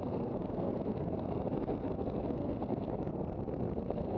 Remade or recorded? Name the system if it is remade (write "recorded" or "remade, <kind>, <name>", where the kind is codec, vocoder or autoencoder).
remade, codec, SNAC